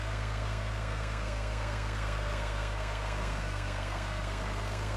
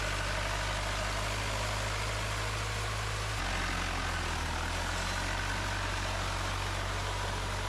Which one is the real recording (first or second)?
second